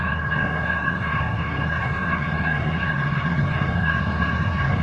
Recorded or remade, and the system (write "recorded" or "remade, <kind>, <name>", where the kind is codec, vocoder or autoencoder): remade, codec, SNAC